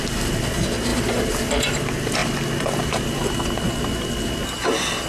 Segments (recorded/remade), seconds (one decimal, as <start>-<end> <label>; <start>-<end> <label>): 0.0-5.1 recorded